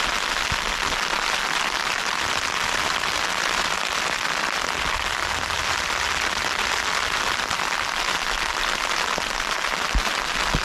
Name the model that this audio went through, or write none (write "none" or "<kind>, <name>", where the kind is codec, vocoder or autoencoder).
none